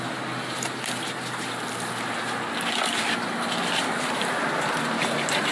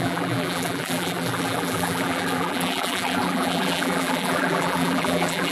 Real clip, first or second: first